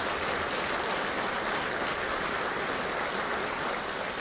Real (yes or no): yes